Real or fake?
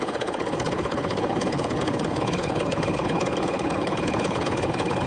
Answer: fake